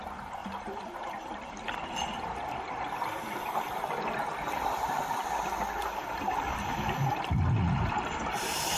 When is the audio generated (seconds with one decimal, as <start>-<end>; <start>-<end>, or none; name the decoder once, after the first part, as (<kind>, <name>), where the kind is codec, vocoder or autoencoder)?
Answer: 0.4-1.1 (vocoder, BigVGAN v2)